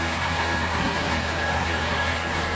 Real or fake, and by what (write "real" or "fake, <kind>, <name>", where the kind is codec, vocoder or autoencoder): fake, codec, SNAC